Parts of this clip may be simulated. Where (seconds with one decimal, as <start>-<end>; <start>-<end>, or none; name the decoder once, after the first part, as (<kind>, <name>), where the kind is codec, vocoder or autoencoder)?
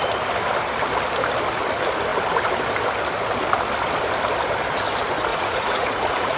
5.3-6.4 (vocoder, Vocos)